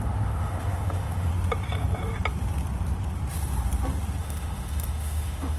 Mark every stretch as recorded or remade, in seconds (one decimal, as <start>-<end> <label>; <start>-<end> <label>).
0.0-1.3 remade; 1.3-4.2 recorded; 4.2-5.6 remade